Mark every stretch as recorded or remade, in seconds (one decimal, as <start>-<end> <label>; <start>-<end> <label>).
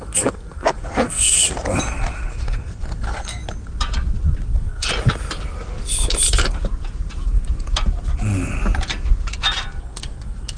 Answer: 0.0-1.4 remade; 1.4-2.3 recorded; 2.3-3.4 remade; 3.4-4.5 recorded; 4.5-4.9 remade; 4.9-9.8 recorded; 9.8-10.6 remade